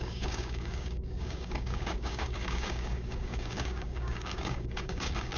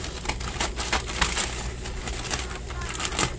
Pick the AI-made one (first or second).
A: first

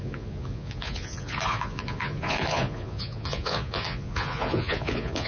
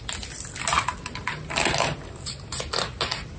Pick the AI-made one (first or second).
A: first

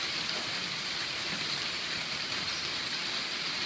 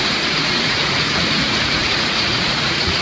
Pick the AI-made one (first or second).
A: second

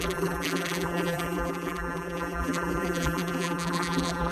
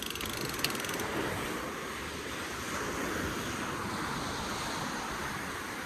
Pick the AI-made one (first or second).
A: first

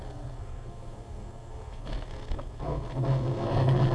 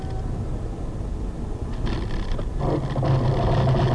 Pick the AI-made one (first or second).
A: first